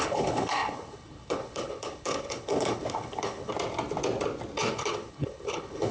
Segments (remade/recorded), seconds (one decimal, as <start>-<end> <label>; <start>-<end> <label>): 0.0-3.5 remade; 3.5-4.7 recorded; 4.7-5.9 remade